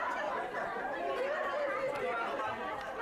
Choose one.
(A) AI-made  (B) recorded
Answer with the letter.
B